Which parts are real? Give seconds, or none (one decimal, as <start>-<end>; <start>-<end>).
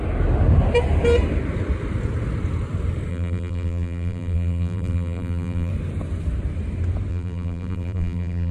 0.0-3.1; 5.7-7.1